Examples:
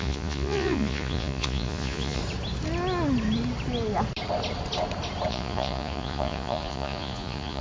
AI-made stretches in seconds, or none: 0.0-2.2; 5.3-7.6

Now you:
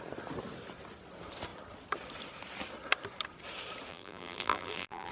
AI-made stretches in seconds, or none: 3.9-5.1

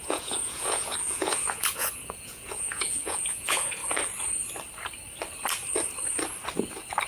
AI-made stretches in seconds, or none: 0.0-3.8

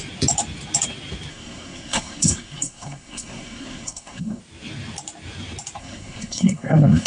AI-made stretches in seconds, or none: 1.3-4.4; 5.8-7.1

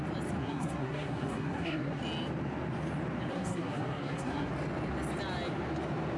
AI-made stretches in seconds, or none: 0.4-2.0; 3.3-4.5